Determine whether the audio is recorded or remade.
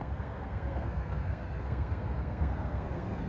remade